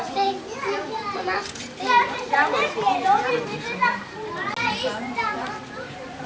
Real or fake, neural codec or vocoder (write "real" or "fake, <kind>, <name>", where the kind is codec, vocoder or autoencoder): real